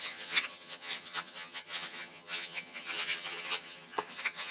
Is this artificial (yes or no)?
yes